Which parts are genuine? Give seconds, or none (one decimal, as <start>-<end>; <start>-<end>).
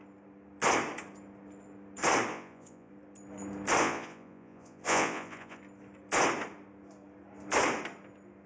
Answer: 0.0-2.3; 2.9-3.8; 5.6-8.5